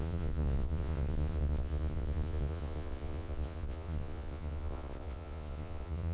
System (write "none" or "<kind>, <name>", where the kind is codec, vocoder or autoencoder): vocoder, Vocos